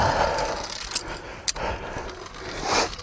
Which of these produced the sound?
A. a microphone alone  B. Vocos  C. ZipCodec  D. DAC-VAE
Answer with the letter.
A